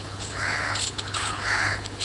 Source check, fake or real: fake